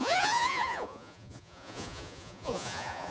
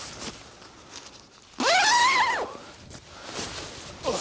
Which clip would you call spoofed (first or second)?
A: first